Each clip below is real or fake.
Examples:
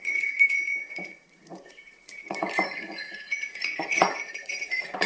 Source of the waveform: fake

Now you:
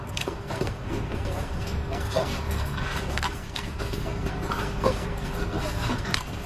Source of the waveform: fake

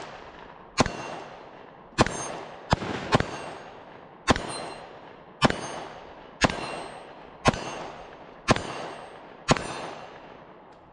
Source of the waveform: real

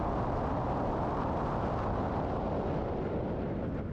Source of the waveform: real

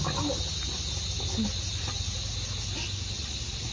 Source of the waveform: real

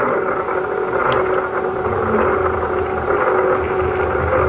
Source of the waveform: real